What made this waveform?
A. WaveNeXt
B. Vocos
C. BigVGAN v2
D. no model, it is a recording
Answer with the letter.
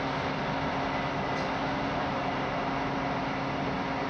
D